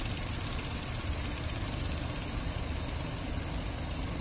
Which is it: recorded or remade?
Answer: recorded